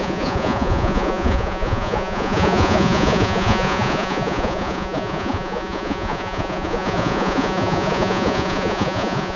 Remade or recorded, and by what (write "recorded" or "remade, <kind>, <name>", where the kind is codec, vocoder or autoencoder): remade, vocoder, Vocos